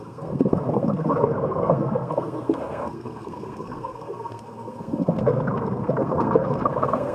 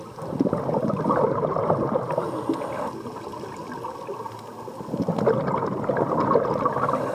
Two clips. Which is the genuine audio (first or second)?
second